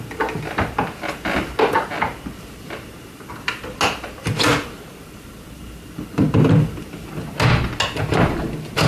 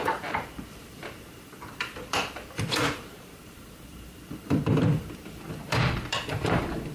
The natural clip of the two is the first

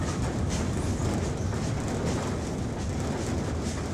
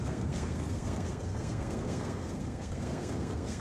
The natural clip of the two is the first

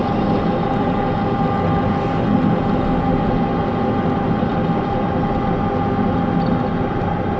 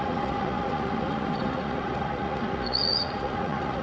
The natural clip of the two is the first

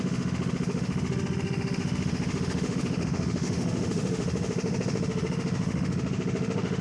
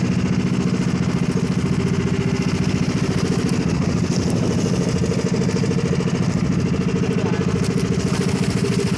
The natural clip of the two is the second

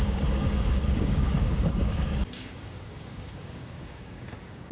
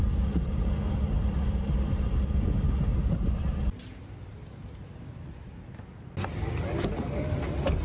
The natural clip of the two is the second